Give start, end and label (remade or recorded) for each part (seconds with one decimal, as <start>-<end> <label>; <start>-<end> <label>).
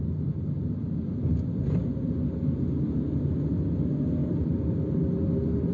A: 0.0-5.7 recorded